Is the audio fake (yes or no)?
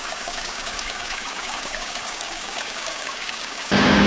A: yes